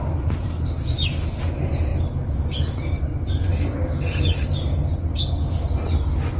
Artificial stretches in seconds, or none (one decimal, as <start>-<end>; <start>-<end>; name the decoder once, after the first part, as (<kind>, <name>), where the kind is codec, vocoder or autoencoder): none